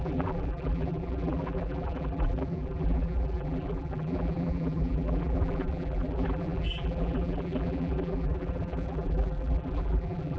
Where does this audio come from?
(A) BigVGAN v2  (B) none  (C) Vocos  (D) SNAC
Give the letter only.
A